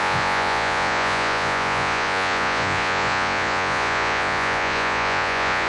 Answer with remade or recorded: remade